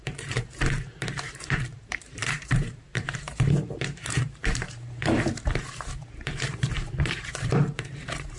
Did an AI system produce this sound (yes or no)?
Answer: yes